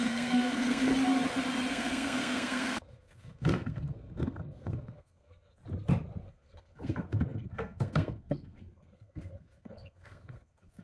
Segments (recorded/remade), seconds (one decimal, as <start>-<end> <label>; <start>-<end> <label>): 0.0-0.9 remade; 0.9-1.7 recorded; 1.7-5.6 remade; 5.6-6.2 recorded; 6.2-10.8 remade